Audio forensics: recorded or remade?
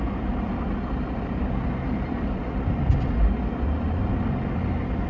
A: recorded